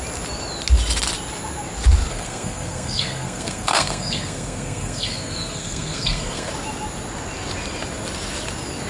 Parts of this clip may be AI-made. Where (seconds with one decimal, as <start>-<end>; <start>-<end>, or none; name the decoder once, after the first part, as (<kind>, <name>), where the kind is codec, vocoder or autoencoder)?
2.1-6.5 (codec, SNAC)